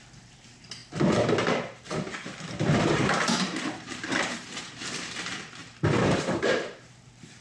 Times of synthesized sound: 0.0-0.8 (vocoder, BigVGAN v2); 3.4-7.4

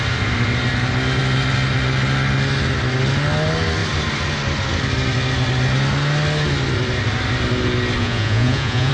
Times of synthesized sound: 8.0-8.9 (vocoder, Vocos)